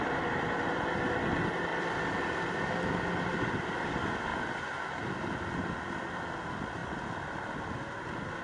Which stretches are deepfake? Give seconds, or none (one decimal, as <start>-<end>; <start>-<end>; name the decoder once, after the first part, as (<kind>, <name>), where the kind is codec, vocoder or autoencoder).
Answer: none